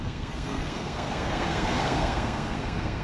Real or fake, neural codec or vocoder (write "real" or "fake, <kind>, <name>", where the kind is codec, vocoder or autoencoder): fake, codec, SNAC